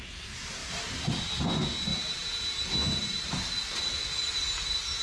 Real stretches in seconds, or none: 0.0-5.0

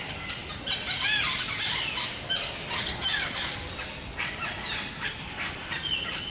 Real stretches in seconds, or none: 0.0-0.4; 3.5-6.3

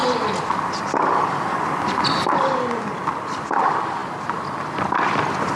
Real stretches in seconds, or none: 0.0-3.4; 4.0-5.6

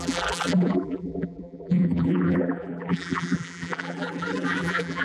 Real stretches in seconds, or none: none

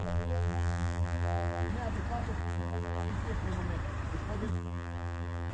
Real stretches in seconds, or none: 1.7-2.4; 3.1-4.5

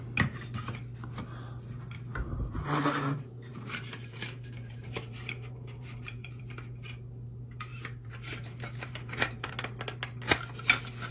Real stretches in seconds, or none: 0.0-2.1; 2.8-3.5; 6.4-7.7; 9.5-11.1

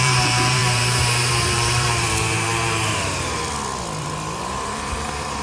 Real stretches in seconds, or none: 3.4-4.0